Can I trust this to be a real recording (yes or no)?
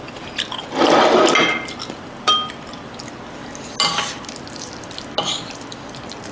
yes